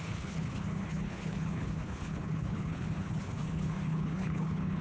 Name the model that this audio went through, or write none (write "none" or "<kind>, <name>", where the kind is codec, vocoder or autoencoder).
codec, HILCodec